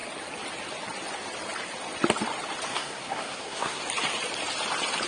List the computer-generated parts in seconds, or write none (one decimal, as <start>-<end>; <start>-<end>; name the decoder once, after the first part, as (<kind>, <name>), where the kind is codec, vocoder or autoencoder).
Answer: 2.7-3.8 (codec, SNAC)